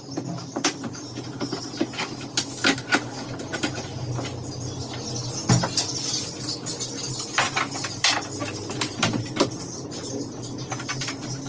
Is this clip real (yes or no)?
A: yes